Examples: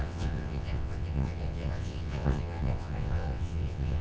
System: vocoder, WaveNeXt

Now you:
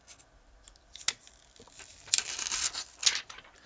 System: none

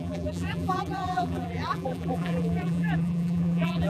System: vocoder, BigVGAN v2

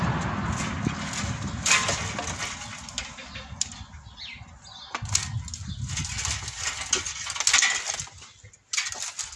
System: none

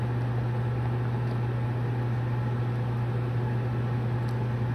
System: none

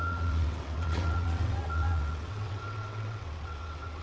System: vocoder, WaveNeXt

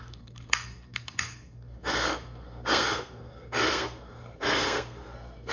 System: codec, SNAC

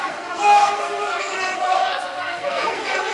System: codec, SNAC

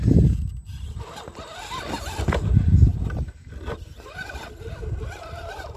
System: none